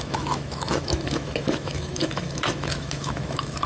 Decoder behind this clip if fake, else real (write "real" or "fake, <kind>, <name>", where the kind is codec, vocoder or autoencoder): fake, autoencoder, DAC-VAE